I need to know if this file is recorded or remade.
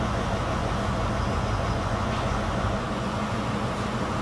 remade